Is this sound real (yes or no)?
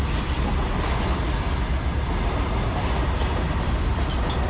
yes